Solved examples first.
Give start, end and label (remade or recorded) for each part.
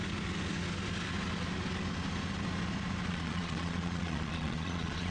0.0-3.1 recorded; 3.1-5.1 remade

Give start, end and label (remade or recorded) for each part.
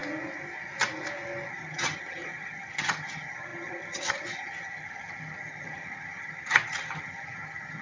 0.0-1.5 recorded; 1.5-7.8 remade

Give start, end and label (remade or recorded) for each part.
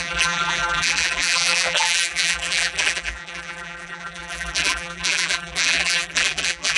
0.0-6.8 remade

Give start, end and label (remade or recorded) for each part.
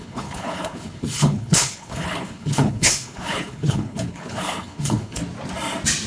0.0-5.2 remade; 5.2-6.1 recorded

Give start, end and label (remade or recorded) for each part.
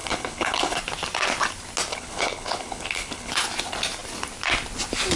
0.0-0.8 remade; 0.8-1.9 recorded; 1.9-3.3 remade; 3.3-5.2 recorded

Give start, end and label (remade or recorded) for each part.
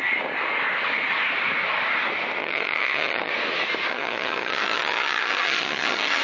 0.0-2.4 recorded; 2.4-3.3 remade; 3.3-3.9 recorded; 3.9-6.2 remade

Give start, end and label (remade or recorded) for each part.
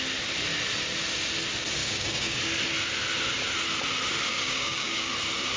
0.0-1.8 recorded; 1.8-2.4 remade; 2.4-4.3 recorded; 4.3-5.1 remade; 5.1-5.6 recorded